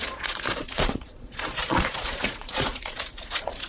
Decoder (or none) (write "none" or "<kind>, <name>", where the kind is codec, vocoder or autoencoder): vocoder, Vocos